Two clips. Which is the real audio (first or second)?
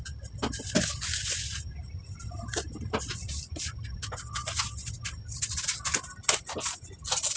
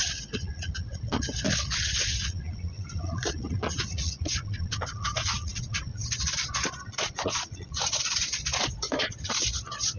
first